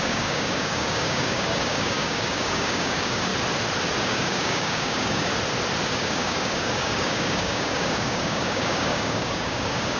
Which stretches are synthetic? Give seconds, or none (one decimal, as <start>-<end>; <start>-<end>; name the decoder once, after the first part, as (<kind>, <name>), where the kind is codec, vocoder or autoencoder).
0.0-3.3 (codec, DAC); 4.0-5.3; 5.9-10.0